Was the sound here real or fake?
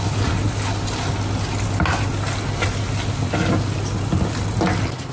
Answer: real